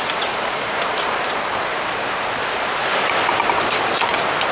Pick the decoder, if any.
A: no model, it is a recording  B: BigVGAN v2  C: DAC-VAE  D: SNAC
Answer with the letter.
A